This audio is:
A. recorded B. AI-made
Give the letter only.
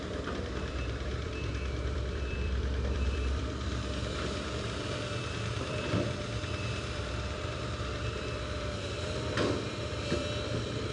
B